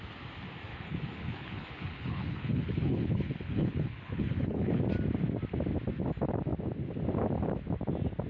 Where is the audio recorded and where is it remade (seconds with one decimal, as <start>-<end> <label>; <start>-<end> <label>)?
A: 0.0-0.7 recorded; 0.7-4.8 remade; 4.8-8.3 recorded